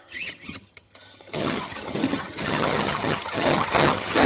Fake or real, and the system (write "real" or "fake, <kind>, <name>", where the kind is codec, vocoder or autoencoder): fake, vocoder, HiFi-GAN